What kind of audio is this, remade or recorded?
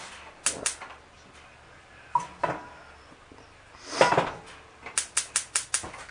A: recorded